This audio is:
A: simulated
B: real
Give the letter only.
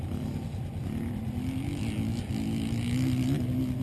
B